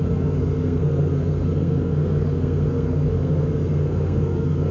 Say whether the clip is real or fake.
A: fake